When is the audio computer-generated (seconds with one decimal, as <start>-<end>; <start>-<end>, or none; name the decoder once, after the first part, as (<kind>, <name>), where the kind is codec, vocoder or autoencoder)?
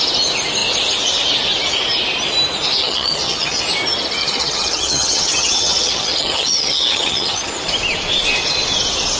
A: 2.8-3.6 (vocoder, HiFi-GAN); 4.2-7.5